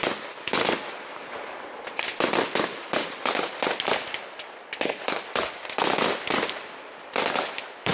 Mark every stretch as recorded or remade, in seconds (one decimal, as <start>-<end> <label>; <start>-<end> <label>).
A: 0.0-7.9 recorded